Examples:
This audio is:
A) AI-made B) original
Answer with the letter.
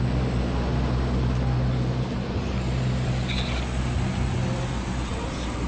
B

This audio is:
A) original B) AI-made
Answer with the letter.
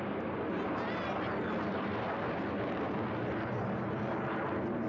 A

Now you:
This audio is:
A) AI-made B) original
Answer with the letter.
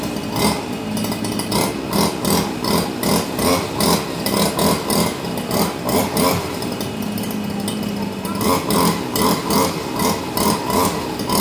B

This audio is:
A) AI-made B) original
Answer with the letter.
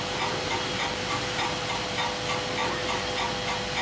B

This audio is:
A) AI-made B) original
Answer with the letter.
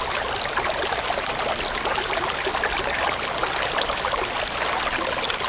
B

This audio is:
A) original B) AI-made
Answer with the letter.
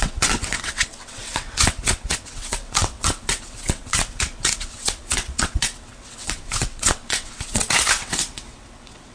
B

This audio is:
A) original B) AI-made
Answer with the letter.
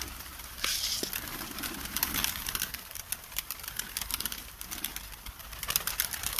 A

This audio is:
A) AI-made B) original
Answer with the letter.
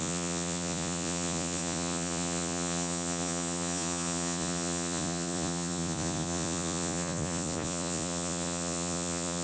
A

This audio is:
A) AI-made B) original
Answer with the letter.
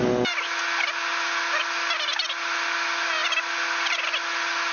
B